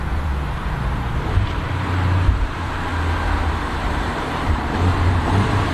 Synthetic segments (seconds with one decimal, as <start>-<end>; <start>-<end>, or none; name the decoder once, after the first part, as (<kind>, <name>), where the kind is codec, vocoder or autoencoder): 0.0-2.9 (vocoder, BigVGAN v2); 3.5-5.7